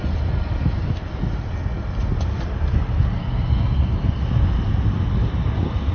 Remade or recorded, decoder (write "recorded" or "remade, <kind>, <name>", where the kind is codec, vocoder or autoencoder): recorded